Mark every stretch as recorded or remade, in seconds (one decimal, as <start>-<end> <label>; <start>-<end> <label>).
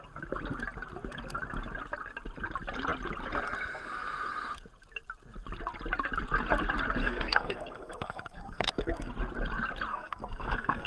0.0-7.0 recorded; 7.0-9.1 remade; 9.1-9.9 recorded; 9.9-10.9 remade